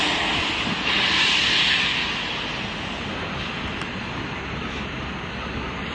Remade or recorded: recorded